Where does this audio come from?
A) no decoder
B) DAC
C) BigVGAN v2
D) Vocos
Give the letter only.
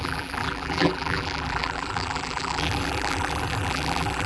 C